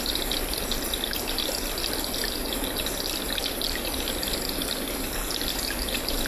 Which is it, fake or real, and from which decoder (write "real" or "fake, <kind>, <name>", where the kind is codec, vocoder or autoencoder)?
real